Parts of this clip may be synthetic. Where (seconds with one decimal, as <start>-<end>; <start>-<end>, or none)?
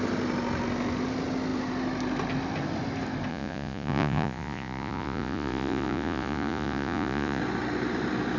3.3-7.4